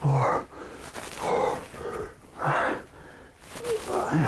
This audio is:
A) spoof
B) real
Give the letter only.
B